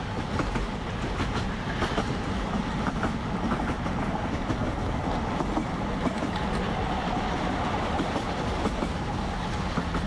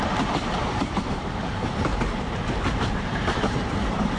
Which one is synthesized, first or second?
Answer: second